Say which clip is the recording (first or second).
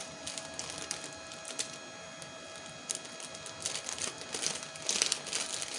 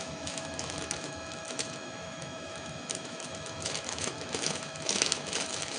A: first